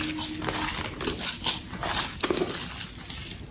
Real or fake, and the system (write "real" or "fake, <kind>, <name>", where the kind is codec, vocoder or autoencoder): real